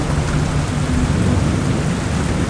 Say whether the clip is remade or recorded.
recorded